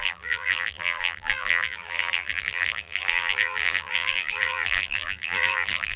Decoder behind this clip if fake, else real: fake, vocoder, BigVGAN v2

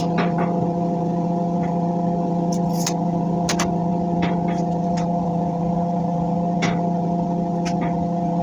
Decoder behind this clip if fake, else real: real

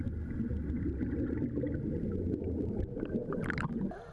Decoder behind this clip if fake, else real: real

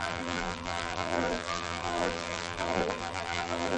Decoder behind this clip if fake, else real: fake, vocoder, BigVGAN v2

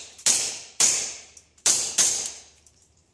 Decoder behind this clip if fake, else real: fake, vocoder, BigVGAN v2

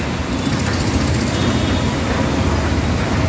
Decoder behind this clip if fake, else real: real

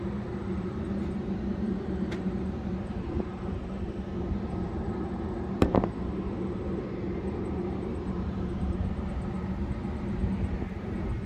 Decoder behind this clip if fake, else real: fake, vocoder, BigVGAN v2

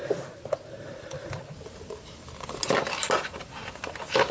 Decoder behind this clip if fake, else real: real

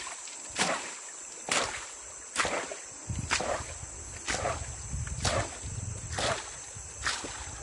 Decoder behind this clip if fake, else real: real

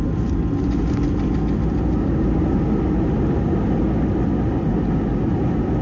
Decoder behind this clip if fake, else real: real